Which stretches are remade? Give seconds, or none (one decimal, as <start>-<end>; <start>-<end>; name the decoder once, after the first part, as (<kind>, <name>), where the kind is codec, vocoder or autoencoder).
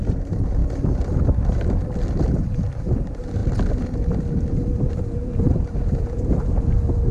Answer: 0.0-0.6 (vocoder, BigVGAN v2); 2.8-3.4; 4.6-7.1